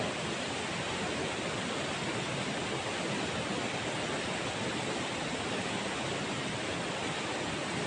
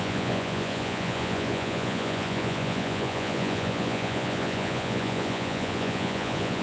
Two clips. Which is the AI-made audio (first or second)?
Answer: second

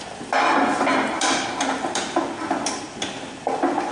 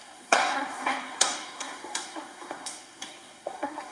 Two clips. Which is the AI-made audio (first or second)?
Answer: second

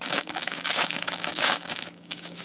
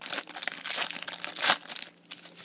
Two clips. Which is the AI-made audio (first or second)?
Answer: first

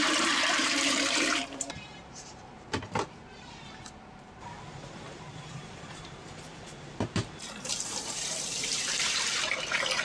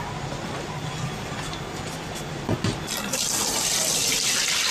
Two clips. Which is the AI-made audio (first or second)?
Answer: first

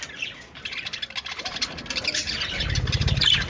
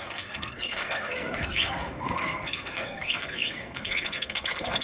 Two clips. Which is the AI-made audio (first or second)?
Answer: second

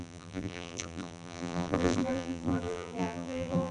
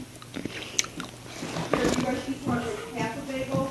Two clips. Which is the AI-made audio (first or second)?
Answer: first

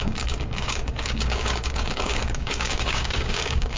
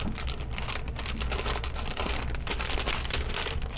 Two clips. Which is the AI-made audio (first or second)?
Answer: first